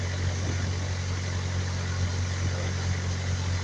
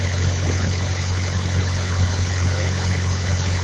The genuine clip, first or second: first